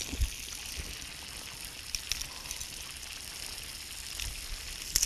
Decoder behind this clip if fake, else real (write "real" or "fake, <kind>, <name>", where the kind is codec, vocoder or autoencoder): real